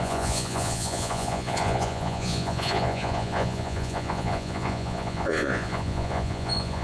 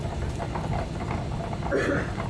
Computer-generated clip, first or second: first